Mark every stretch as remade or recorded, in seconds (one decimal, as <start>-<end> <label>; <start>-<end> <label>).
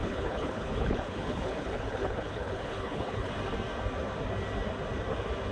0.0-3.3 remade; 3.3-5.5 recorded